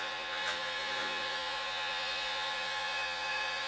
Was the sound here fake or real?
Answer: fake